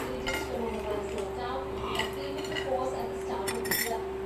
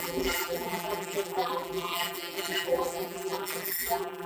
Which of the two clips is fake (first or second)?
second